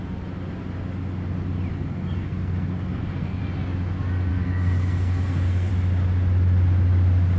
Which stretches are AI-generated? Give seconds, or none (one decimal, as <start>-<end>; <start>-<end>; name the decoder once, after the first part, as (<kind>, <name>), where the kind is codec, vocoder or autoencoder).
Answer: 1.7-3.4 (codec, SNAC); 4.3-5.7